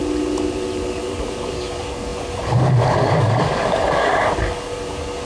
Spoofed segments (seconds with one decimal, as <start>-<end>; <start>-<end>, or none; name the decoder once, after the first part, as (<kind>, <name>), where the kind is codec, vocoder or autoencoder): 1.0-5.3 (codec, DAC)